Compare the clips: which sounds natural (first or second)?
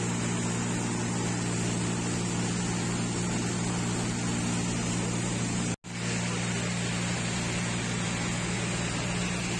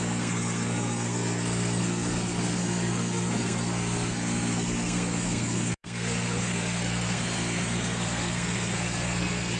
first